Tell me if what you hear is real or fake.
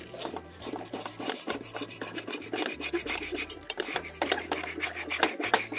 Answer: fake